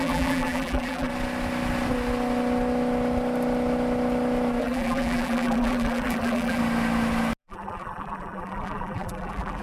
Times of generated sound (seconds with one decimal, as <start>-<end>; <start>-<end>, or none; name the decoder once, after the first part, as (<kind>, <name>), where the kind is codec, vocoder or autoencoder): 0.0-1.1 (vocoder, BigVGAN v2); 4.6-6.6; 7.4-9.6